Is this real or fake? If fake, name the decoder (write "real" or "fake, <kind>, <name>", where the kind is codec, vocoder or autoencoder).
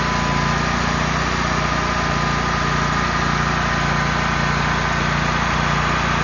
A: real